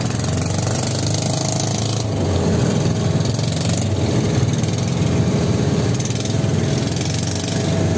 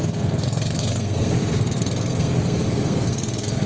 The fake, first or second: second